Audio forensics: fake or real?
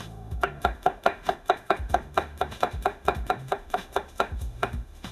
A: fake